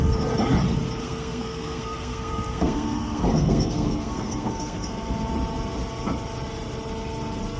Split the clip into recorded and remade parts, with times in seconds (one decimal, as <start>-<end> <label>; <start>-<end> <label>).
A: 0.0-1.0 recorded; 1.0-5.1 remade; 5.1-7.6 recorded